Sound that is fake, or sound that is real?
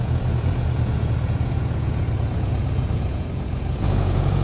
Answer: fake